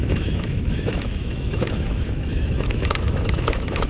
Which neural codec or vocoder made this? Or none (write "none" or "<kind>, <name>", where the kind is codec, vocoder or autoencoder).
autoencoder, DAC-VAE